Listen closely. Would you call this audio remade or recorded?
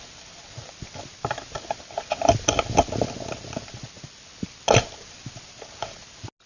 recorded